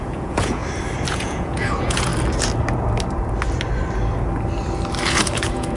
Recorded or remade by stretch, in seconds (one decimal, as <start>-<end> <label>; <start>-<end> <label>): 0.0-0.6 remade; 0.6-1.1 recorded; 1.1-2.1 remade; 2.1-5.1 recorded; 5.1-5.8 remade